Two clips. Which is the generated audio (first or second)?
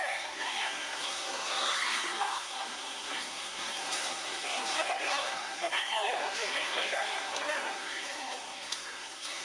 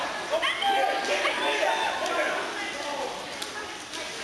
first